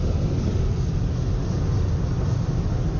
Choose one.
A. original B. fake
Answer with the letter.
A